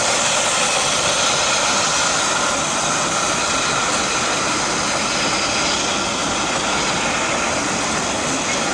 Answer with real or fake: real